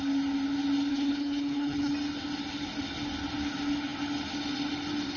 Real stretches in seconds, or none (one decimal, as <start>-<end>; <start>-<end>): 0.0-0.9; 1.9-5.2